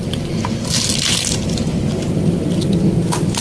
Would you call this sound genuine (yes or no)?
yes